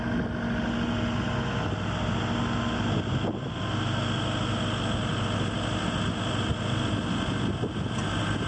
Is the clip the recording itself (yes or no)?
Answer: yes